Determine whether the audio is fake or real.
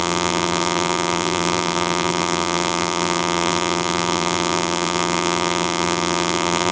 fake